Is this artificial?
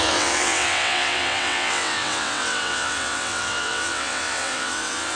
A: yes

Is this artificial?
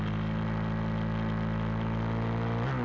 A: no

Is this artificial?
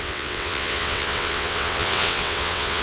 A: yes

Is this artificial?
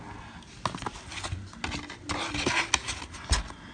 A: no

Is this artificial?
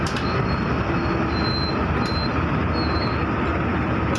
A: no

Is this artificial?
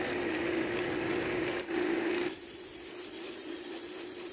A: no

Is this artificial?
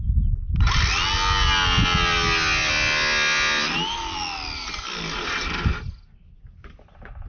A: no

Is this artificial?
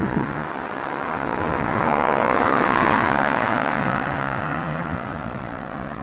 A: yes